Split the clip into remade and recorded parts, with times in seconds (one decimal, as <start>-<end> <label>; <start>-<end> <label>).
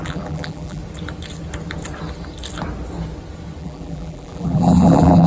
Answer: 0.0-0.8 remade; 0.8-3.6 recorded; 3.6-5.3 remade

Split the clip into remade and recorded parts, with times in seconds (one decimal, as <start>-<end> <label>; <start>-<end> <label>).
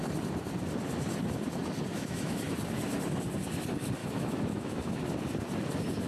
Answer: 0.0-1.9 recorded; 1.9-2.4 remade; 2.4-4.0 recorded; 4.0-5.0 remade; 5.0-6.1 recorded